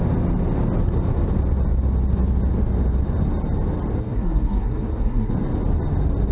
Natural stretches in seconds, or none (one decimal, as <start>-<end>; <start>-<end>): 0.0-4.0; 5.3-6.3